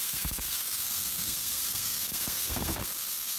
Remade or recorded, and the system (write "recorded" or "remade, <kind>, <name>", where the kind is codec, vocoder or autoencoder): remade, codec, SNAC